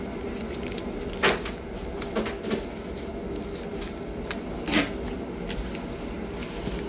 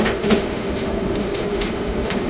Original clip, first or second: first